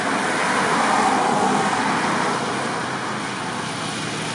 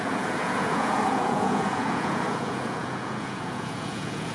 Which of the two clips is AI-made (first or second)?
second